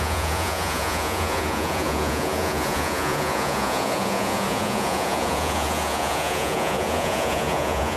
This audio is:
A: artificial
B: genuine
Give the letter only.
A